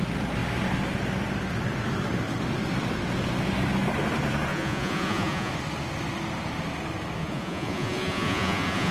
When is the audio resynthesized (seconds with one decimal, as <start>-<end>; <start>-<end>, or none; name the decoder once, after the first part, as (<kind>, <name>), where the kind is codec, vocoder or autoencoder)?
4.5-5.5 (vocoder, Vocos); 7.2-8.9